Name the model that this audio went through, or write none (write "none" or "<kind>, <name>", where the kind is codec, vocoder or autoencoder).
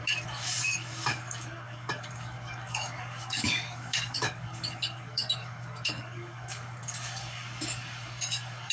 codec, DAC